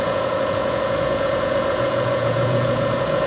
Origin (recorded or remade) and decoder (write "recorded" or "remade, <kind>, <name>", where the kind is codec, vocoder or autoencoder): remade, vocoder, Vocos